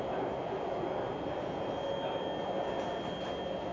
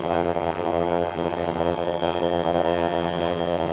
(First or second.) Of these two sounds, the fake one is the second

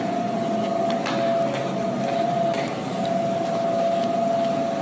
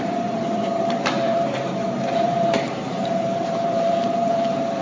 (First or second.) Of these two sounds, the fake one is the second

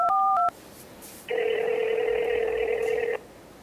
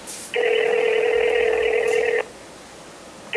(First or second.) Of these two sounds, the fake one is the first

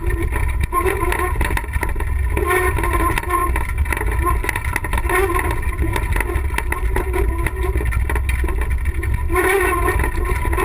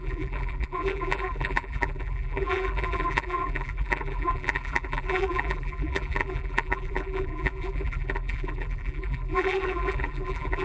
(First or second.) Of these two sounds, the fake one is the second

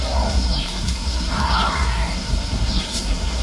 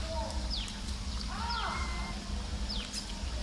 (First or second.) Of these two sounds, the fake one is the first